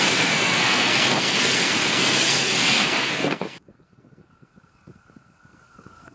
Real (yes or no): no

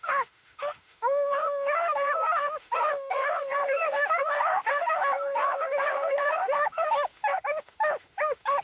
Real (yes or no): no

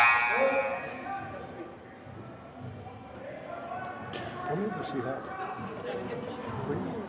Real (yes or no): yes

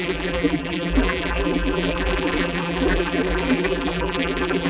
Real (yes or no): no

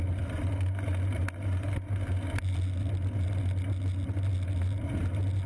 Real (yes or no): yes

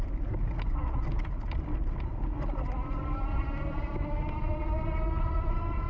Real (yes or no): yes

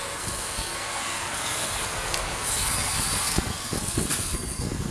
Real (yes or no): no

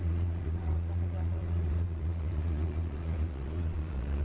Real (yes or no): no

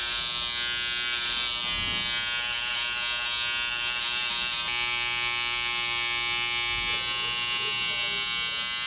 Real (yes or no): yes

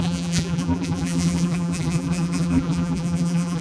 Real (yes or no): no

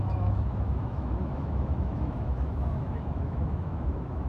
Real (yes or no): no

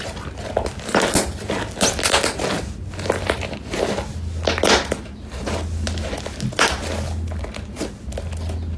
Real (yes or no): yes